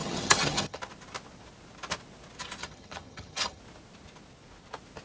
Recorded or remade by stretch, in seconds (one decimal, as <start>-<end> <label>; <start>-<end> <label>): 0.0-0.8 remade; 0.8-2.6 recorded; 2.6-3.6 remade; 3.6-5.0 recorded